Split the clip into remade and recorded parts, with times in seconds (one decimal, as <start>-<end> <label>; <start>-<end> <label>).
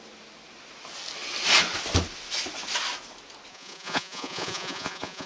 0.0-3.5 recorded; 3.5-5.3 remade